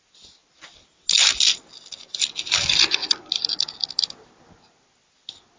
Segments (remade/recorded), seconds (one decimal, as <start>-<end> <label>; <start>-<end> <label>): 0.0-5.6 recorded